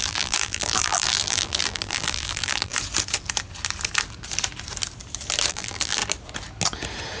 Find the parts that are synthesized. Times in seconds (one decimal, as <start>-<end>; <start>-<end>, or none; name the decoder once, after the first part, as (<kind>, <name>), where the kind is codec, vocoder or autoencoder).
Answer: 0.0-2.7 (vocoder, BigVGAN v2); 5.5-6.0

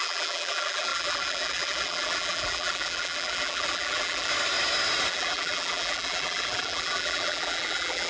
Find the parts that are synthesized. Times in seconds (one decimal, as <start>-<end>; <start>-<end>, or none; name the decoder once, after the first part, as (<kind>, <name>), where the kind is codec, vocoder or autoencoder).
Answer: 0.0-4.3 (vocoder, BigVGAN v2); 5.1-8.1

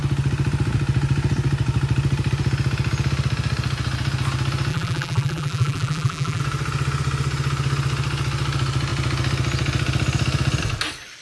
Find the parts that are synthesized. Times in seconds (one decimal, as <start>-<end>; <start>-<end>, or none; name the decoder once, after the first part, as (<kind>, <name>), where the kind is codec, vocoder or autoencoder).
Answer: 4.7-6.4 (vocoder, BigVGAN v2)

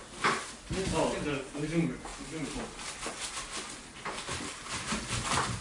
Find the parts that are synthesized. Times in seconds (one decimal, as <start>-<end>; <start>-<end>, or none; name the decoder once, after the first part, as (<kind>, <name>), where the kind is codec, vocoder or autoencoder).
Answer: none

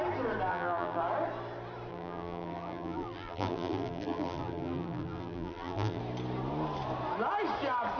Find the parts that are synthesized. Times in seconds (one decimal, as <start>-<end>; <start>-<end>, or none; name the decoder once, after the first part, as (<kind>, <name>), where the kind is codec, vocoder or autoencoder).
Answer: 0.5-1.0 (vocoder, BigVGAN v2); 1.9-6.0

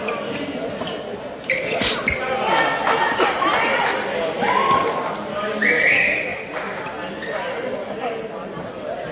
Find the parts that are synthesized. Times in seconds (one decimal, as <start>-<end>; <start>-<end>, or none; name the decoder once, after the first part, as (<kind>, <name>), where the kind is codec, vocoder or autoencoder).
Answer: none

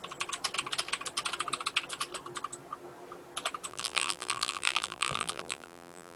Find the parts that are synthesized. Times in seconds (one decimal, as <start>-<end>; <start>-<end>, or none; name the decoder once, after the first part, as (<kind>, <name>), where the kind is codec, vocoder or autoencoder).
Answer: 3.7-6.2 (vocoder, BigVGAN v2)

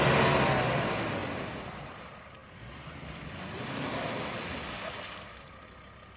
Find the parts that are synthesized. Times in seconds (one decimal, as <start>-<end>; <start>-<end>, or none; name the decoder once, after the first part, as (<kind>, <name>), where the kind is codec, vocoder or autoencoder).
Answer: 1.2-1.9 (vocoder, BigVGAN v2); 2.4-6.2